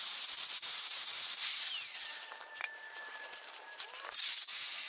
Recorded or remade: remade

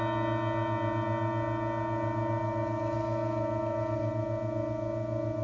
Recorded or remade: recorded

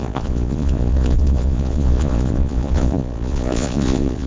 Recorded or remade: remade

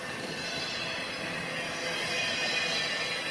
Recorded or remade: recorded